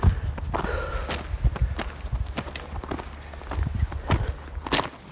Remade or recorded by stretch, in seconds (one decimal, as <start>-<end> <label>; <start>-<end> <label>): 0.0-5.1 recorded